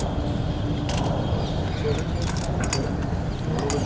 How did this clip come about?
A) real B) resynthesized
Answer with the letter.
A